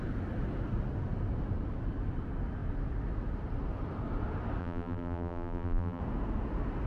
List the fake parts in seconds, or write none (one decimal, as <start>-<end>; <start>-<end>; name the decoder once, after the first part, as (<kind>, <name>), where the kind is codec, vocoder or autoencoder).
4.6-6.0 (vocoder, BigVGAN v2)